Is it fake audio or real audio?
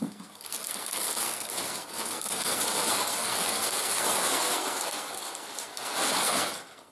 fake